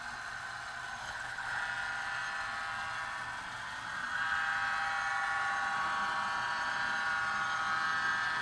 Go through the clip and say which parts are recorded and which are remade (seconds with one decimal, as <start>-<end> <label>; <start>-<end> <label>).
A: 0.0-1.0 recorded; 1.0-1.6 remade; 1.6-8.4 recorded